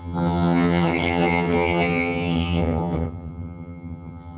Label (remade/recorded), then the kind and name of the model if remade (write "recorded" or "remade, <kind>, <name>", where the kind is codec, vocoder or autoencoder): remade, vocoder, HiFi-GAN